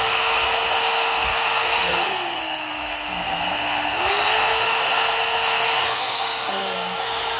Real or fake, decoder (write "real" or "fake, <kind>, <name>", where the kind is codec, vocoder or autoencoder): fake, codec, SNAC